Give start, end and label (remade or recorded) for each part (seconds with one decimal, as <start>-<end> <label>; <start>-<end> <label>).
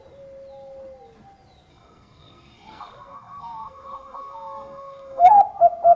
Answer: 0.0-1.7 recorded; 1.7-5.3 remade; 5.3-6.0 recorded